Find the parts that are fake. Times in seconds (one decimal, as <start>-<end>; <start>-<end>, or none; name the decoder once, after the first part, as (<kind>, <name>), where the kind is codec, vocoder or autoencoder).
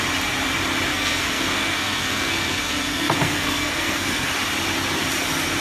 0.9-4.3 (codec, SNAC)